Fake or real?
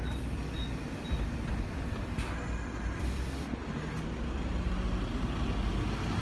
real